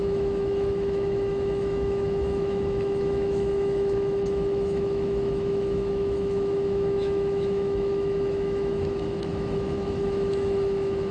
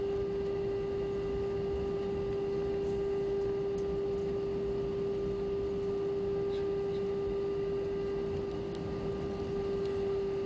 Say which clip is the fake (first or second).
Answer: first